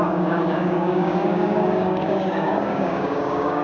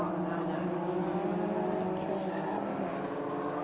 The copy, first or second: first